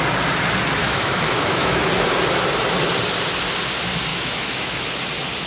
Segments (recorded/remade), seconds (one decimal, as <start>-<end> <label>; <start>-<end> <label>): 0.0-0.8 recorded; 0.8-1.9 remade; 1.9-4.1 recorded; 4.1-4.9 remade; 4.9-5.5 recorded